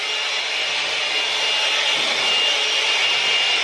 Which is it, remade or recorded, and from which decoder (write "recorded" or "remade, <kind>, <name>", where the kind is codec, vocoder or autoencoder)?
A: recorded